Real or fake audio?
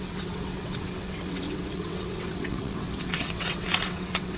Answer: fake